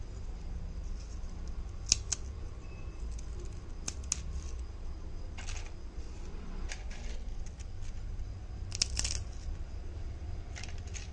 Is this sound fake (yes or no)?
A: no